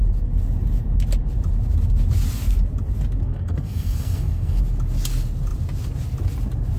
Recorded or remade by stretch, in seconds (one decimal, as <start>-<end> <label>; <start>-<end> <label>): 0.0-3.2 recorded; 3.2-4.6 remade; 4.6-6.8 recorded